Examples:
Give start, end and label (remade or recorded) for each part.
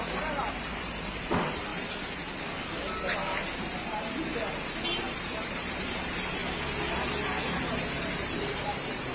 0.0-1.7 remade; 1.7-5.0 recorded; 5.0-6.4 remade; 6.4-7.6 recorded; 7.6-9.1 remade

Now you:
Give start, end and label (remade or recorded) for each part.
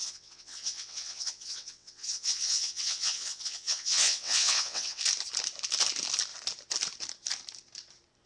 0.0-5.0 remade; 5.0-8.3 recorded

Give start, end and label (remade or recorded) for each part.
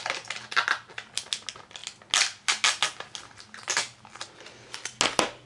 0.0-5.5 recorded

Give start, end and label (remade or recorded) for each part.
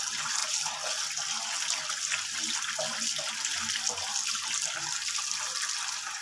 0.0-6.2 recorded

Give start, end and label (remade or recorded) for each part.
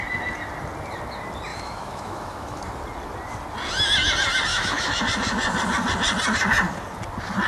0.0-1.5 recorded; 1.5-2.6 remade; 2.6-4.5 recorded; 4.5-5.0 remade; 5.0-7.5 recorded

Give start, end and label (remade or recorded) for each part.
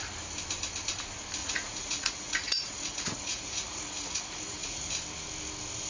0.0-1.4 recorded; 1.4-4.9 remade; 4.9-5.9 recorded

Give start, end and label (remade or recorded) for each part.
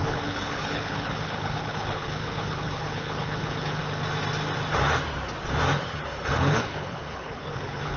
0.0-3.8 remade; 3.8-5.8 recorded; 5.8-8.0 remade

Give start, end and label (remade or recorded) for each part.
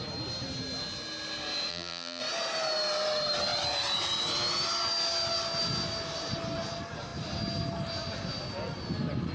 0.0-1.7 recorded; 1.7-2.2 remade; 2.2-9.3 recorded